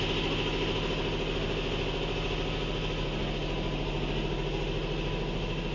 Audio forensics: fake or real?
real